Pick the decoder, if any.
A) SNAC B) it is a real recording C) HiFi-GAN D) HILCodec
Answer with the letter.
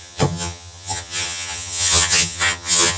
C